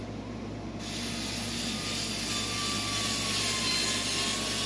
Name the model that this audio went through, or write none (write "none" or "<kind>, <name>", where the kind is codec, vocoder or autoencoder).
none